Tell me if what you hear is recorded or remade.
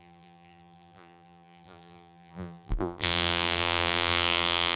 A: remade